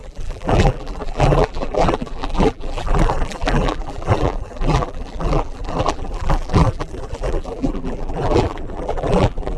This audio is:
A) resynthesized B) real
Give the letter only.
A